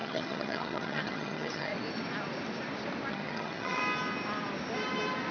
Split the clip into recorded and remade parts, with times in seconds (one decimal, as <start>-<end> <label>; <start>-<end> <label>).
0.0-1.7 remade; 1.7-3.1 recorded; 3.1-3.8 remade; 3.8-5.3 recorded